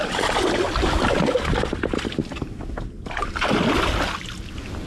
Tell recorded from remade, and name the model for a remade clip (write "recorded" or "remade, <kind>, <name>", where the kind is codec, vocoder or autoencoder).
recorded